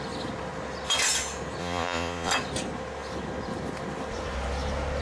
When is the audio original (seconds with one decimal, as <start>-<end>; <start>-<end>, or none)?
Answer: 0.0-1.6; 2.3-5.0